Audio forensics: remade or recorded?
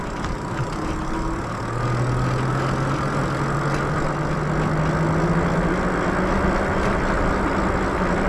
recorded